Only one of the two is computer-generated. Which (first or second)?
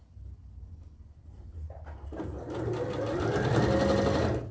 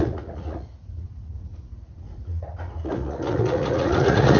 second